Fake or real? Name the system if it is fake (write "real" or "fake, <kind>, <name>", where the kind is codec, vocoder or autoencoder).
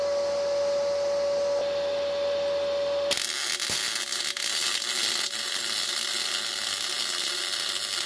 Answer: real